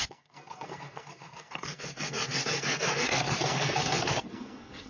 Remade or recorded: remade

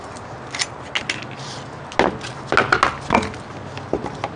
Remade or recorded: recorded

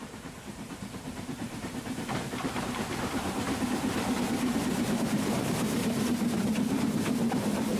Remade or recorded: remade